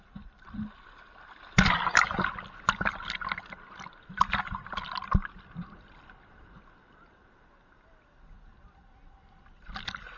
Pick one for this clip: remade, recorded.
recorded